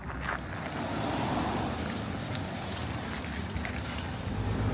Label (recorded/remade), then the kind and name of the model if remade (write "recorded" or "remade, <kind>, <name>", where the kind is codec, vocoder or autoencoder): recorded